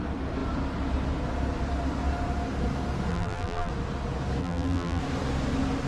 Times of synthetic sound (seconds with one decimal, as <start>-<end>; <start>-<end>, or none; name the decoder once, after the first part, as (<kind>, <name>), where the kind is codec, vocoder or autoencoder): 3.1-3.7 (vocoder, BigVGAN v2); 4.4-5.0